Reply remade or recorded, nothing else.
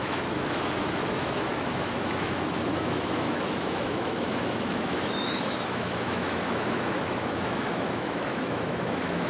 remade